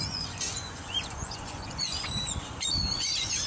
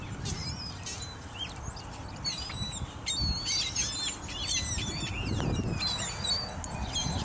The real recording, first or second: second